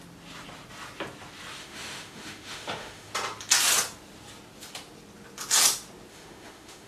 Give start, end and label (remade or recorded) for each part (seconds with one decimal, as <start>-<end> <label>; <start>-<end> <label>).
0.0-1.6 recorded; 1.6-3.1 remade; 3.1-6.1 recorded; 6.1-6.9 remade